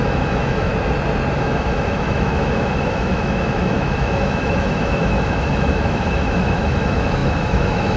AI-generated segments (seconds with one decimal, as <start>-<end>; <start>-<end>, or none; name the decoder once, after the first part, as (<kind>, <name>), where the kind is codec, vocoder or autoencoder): 0.0-0.7 (autoencoder, DAC-VAE); 1.4-8.0